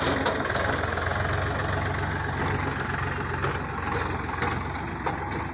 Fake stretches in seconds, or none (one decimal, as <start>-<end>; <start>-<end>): none